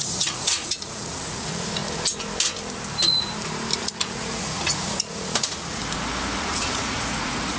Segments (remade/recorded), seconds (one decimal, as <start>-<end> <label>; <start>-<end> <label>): 0.0-1.8 remade; 1.8-3.8 recorded; 3.8-5.8 remade; 5.8-6.4 recorded; 6.4-7.6 remade